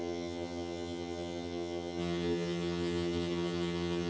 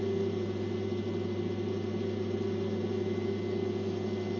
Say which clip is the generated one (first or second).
first